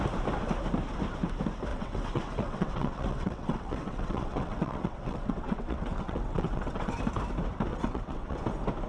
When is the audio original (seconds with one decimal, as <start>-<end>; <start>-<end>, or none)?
0.0-1.7; 6.9-7.7; 8.4-8.9

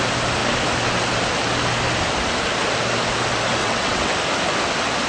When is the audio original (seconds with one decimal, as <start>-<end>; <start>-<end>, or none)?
0.0-3.6; 4.1-5.1

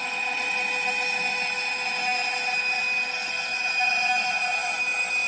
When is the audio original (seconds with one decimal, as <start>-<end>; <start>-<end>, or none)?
0.0-5.3